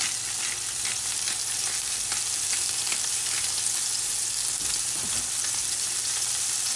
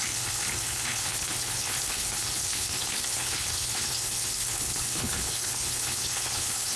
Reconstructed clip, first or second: second